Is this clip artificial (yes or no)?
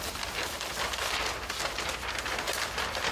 no